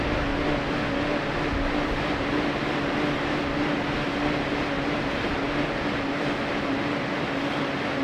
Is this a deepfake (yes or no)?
no